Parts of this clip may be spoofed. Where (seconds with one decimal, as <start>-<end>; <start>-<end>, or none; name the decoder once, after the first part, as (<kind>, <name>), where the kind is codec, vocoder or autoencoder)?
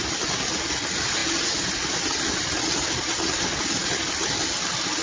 none